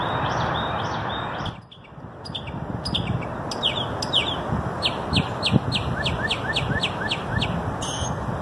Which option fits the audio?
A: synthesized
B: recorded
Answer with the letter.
B